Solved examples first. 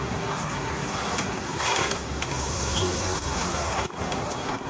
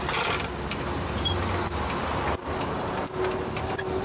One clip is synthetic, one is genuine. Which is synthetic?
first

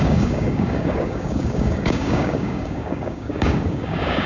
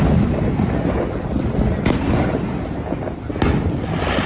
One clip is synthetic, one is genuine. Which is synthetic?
first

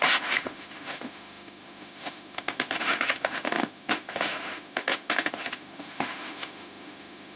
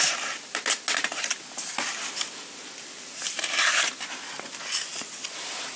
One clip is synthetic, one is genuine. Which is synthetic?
first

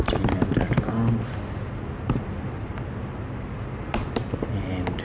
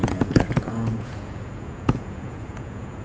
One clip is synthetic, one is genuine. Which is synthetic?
second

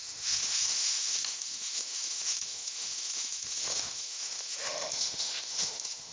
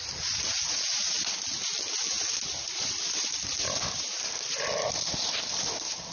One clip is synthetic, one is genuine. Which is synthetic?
first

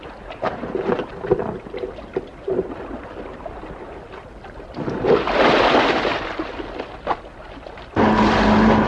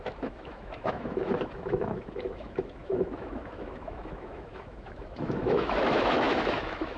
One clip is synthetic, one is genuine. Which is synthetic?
second